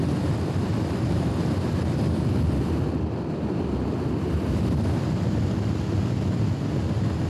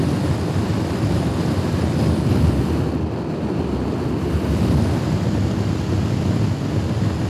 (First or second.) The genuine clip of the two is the second